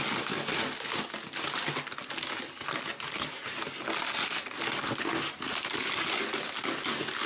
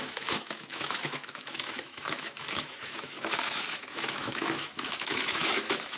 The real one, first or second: first